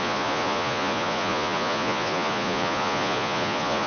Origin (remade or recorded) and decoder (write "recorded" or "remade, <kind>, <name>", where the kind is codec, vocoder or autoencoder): remade, vocoder, Vocos